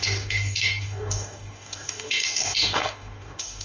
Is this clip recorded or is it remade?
remade